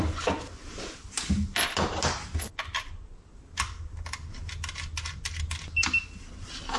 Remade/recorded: recorded